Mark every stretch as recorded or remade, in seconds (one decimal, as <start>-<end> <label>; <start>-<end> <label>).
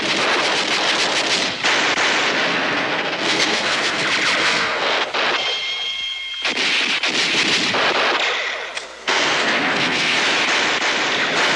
0.0-2.5 recorded; 2.5-4.0 remade; 4.0-4.4 recorded; 4.4-5.1 remade; 5.1-8.9 recorded; 8.9-10.2 remade; 10.2-11.6 recorded